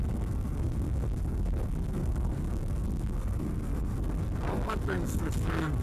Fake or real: fake